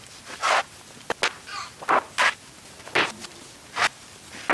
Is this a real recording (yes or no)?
yes